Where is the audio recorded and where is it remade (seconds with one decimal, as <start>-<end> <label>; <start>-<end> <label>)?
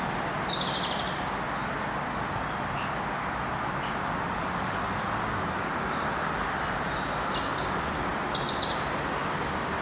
0.0-9.8 recorded